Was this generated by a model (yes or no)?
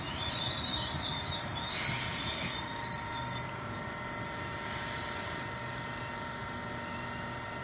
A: no